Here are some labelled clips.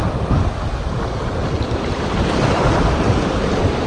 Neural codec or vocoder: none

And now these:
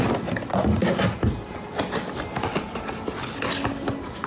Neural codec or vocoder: none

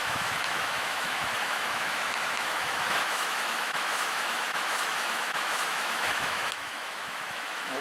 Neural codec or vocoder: autoencoder, DAC-VAE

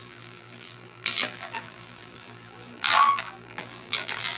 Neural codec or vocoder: vocoder, BigVGAN v2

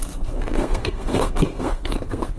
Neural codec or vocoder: codec, SNAC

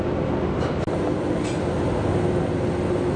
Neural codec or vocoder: none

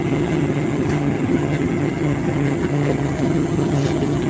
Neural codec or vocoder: vocoder, HiFi-GAN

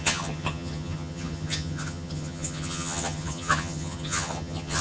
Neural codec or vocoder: vocoder, HiFi-GAN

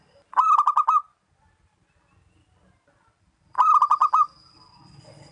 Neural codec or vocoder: none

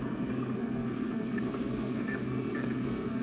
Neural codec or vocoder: codec, SNAC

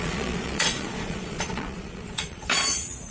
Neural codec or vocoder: vocoder, Vocos